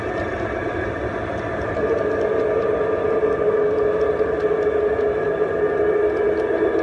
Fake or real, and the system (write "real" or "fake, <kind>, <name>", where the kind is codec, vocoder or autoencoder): real